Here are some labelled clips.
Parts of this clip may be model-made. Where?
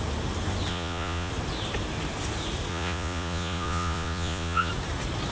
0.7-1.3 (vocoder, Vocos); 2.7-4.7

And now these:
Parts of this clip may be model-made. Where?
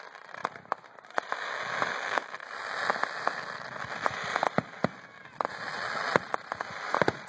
none